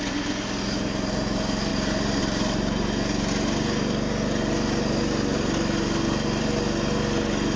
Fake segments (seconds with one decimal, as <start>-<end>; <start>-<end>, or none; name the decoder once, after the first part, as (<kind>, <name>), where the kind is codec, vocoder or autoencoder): none